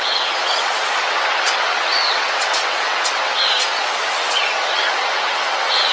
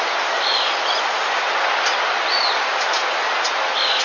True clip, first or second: second